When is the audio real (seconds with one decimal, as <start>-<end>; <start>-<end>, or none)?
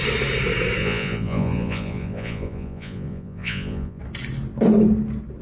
0.0-0.8; 4.0-5.4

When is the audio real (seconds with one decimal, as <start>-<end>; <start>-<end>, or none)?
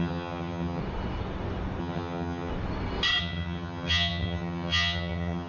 0.8-1.8; 2.5-3.2